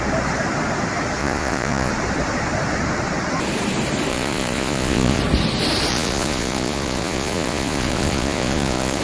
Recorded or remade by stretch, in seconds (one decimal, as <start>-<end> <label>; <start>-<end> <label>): 0.0-1.2 recorded; 1.2-1.9 remade; 1.9-4.1 recorded; 4.1-5.2 remade; 5.2-5.9 recorded; 5.9-9.0 remade